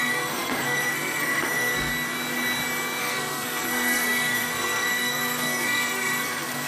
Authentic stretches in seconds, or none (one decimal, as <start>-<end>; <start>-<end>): 1.9-3.0